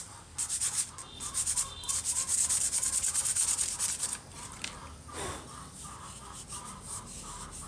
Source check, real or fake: real